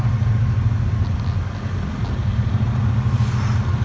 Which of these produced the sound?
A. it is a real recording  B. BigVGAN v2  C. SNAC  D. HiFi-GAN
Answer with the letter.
A